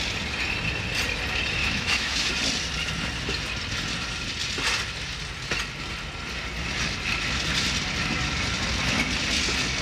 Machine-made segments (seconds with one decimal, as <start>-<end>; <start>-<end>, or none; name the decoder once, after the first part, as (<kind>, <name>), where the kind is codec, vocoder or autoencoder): 1.6-2.3 (autoencoder, DAC-VAE)